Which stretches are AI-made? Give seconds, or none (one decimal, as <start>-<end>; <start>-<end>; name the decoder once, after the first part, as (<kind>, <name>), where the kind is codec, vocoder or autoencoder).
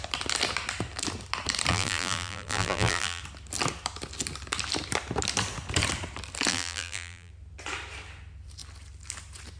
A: 1.7-3.2 (vocoder, BigVGAN v2); 6.5-7.3